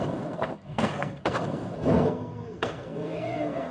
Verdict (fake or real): fake